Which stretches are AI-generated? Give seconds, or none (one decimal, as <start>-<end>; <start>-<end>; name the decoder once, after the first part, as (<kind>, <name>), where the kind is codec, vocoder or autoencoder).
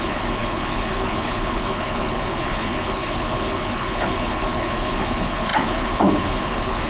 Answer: 0.0-6.9 (codec, HILCodec)